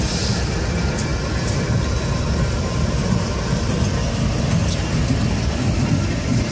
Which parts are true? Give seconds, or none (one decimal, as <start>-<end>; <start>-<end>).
0.0-6.5